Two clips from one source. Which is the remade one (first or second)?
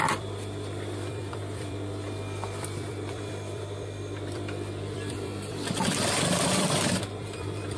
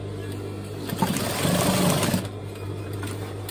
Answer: first